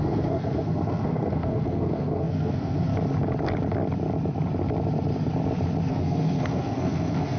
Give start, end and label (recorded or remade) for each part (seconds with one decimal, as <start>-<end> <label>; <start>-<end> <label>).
0.0-2.9 remade; 2.9-5.9 recorded; 5.9-7.4 remade